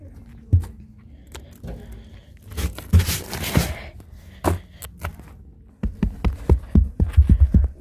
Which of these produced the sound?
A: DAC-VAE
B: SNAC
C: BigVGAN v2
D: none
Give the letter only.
D